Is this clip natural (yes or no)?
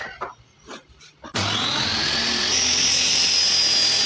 yes